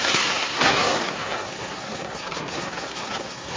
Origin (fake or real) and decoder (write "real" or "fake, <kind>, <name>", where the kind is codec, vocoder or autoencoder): fake, codec, SNAC